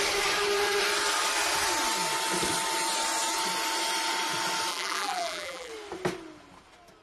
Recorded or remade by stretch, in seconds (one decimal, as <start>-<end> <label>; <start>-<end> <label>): 0.0-4.7 recorded; 4.7-5.7 remade; 5.7-7.0 recorded